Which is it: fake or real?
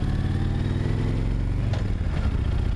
real